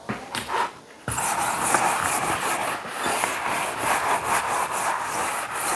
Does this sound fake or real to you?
real